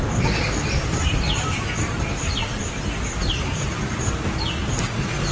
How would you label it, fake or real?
real